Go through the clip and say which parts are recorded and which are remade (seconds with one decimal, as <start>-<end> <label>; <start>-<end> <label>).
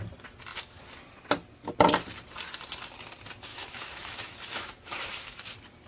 0.0-3.5 recorded; 3.5-5.5 remade; 5.5-5.9 recorded